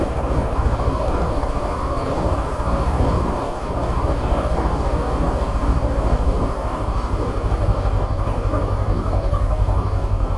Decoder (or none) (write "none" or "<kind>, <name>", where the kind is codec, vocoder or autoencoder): codec, DAC